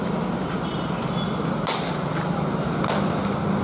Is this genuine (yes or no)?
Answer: yes